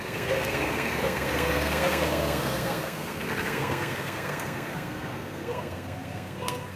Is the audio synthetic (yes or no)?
yes